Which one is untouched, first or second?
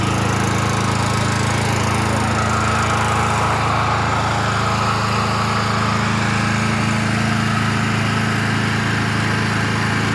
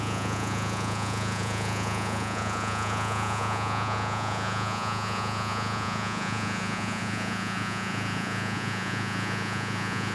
first